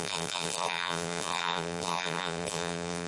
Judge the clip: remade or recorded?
remade